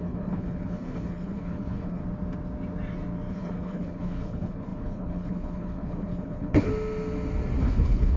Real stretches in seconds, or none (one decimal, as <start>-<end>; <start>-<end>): 2.0-3.3; 6.7-7.6